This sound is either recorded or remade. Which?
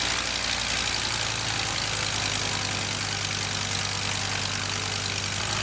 recorded